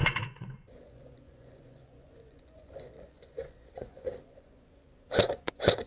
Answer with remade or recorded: remade